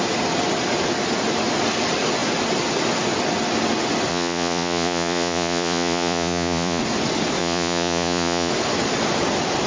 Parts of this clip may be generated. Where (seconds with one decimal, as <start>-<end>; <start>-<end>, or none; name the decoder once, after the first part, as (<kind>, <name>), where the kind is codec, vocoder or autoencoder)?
4.1-6.8 (vocoder, Vocos); 7.4-8.5